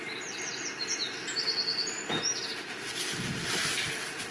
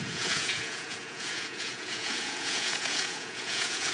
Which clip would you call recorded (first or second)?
first